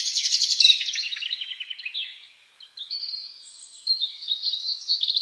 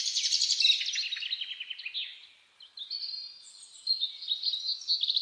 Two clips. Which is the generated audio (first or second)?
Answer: first